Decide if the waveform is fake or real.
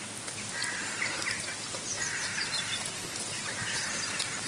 real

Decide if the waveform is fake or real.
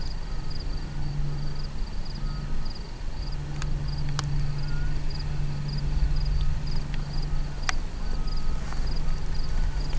real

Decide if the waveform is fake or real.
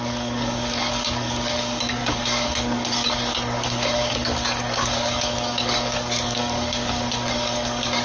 fake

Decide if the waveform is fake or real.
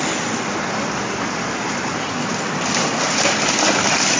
real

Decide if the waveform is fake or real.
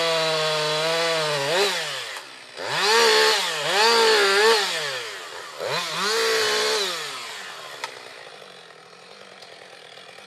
real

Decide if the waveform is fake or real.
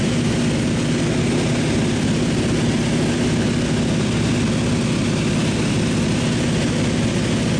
real